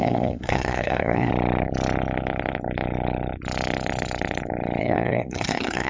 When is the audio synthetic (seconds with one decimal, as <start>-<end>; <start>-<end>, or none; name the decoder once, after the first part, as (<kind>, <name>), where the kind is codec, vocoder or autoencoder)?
0.0-1.3 (codec, SNAC); 4.8-5.9